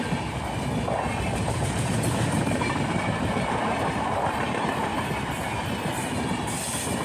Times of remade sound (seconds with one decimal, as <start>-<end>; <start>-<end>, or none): 1.1-5.3